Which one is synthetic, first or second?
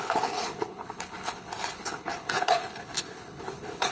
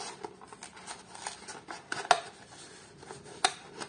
first